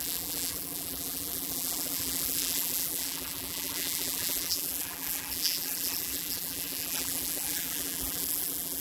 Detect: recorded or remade remade